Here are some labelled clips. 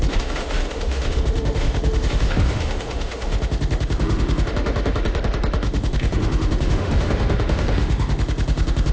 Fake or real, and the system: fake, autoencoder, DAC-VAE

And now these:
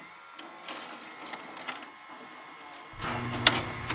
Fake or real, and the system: real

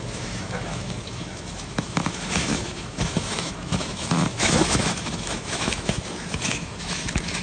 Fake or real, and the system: fake, autoencoder, DAC-VAE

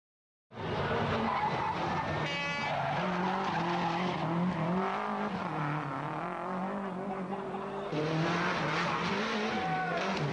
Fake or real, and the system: real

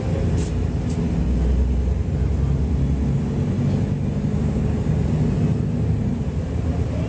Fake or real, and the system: real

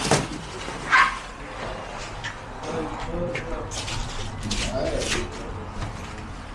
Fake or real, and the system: real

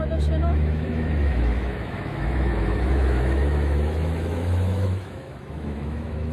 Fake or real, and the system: fake, autoencoder, DAC-VAE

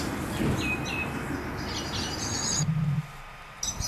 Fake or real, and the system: real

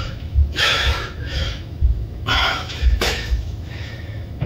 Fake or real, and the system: fake, autoencoder, DAC-VAE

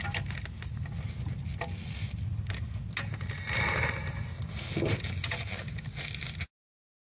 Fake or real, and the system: real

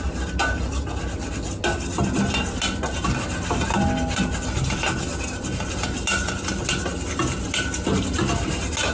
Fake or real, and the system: real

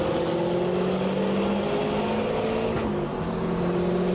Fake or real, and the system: real